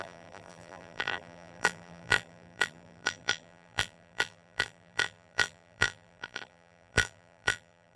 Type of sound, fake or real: fake